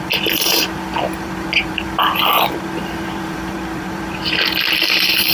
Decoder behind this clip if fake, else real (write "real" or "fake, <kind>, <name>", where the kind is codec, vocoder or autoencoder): fake, vocoder, BigVGAN v2